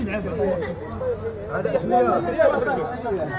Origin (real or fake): real